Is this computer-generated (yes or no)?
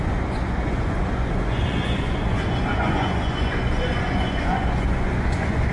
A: yes